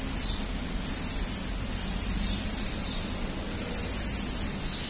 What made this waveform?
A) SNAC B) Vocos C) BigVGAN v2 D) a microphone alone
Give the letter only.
D